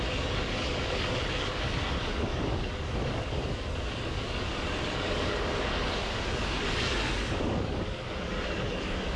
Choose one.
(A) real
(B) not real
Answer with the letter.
B